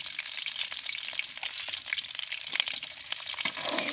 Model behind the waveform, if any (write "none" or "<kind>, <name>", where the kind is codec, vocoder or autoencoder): none